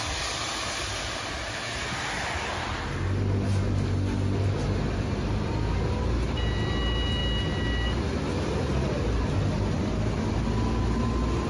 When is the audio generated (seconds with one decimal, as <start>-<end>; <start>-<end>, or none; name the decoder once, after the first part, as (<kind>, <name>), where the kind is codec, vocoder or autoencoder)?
none